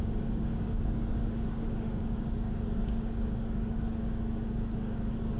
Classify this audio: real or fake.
fake